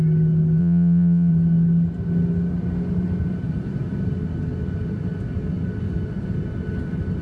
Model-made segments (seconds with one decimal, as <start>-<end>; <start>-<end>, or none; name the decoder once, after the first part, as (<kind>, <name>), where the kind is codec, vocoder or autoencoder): 0.6-1.3 (vocoder, BigVGAN v2)